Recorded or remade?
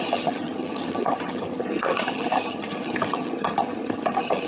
remade